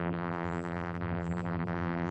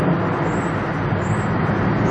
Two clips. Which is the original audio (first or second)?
second